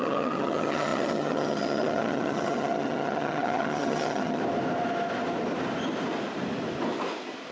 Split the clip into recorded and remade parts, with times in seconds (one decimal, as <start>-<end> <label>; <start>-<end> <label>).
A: 0.0-4.4 remade; 4.4-7.5 recorded